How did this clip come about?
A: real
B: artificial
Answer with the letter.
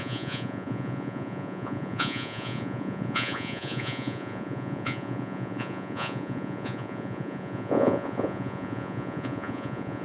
B